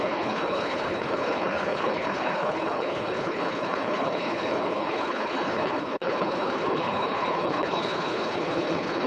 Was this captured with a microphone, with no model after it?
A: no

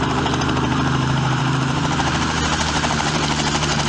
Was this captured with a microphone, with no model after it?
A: no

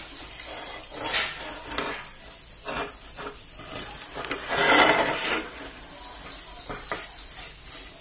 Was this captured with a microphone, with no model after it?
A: yes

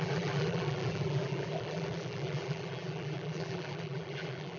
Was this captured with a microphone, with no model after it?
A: no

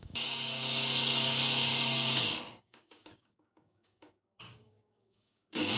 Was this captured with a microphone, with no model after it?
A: no